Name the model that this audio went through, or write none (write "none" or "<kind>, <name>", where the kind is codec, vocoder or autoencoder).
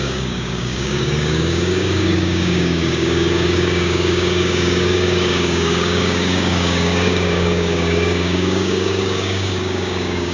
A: codec, DAC